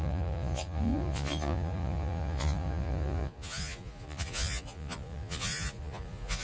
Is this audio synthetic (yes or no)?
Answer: yes